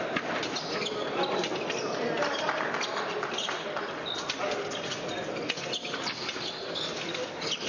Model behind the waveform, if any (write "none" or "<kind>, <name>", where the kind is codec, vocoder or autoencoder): none